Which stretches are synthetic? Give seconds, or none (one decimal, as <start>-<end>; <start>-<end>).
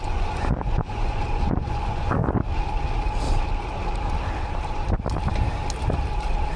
0.0-2.2